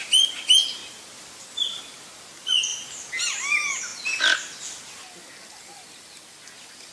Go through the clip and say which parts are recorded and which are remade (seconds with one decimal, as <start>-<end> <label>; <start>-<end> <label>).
0.0-6.9 recorded